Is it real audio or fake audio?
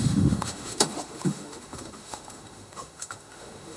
fake